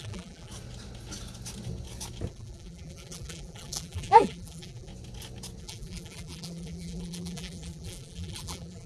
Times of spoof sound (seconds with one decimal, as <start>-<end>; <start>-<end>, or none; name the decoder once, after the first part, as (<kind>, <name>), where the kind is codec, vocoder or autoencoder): 0.0-0.5 (vocoder, BigVGAN v2); 2.3-4.9; 5.6-8.9